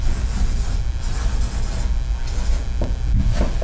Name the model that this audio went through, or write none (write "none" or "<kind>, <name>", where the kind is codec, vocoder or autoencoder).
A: none